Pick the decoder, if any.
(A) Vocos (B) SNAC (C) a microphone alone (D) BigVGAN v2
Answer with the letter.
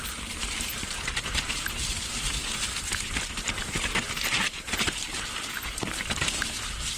D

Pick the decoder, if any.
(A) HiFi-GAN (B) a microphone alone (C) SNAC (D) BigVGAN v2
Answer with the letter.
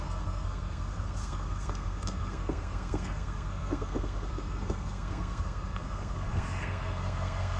C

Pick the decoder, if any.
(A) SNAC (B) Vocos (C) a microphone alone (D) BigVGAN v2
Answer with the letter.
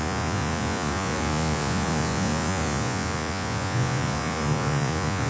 B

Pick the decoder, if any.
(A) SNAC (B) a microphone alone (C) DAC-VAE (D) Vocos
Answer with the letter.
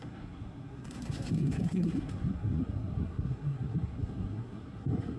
A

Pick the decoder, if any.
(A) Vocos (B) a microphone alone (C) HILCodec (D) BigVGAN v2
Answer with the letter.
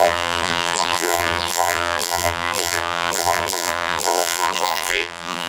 D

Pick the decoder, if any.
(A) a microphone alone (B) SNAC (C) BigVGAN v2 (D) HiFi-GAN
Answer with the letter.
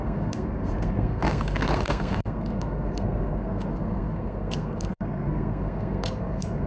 B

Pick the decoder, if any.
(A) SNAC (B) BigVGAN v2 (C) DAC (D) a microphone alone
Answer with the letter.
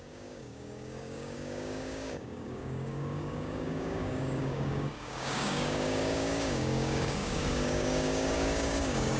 C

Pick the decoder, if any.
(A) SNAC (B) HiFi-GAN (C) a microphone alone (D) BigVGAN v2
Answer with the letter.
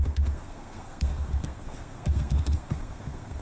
A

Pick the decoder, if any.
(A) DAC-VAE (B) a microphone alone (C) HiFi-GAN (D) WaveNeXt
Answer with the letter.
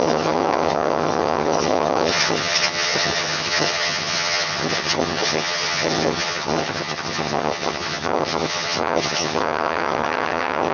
C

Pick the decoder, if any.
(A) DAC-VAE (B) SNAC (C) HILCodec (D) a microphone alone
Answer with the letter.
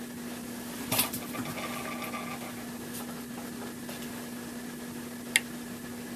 D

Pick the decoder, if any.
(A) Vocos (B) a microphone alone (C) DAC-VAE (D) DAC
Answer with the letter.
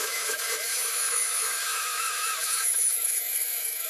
C